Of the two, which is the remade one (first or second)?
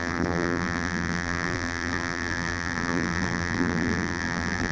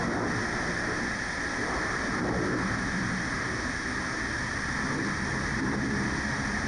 first